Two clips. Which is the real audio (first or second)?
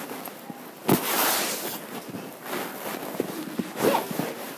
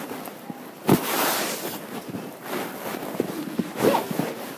first